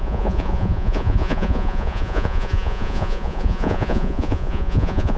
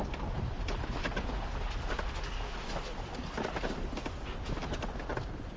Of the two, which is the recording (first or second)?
second